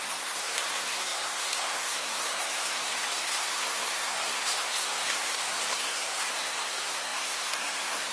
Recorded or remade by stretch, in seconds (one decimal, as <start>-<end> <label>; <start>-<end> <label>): 0.0-8.1 remade

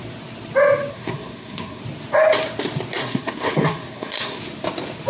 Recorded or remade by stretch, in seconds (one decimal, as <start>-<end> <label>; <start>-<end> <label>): 0.0-0.9 recorded; 0.9-1.8 remade; 1.8-3.0 recorded; 3.0-4.4 remade; 4.4-5.1 recorded